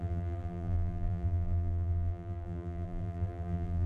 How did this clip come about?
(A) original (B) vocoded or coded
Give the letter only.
B